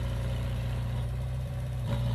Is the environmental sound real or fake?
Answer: fake